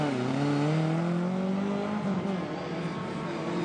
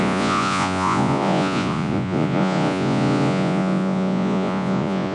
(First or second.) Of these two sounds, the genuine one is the first